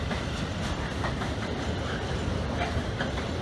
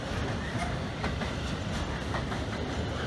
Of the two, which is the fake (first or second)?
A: first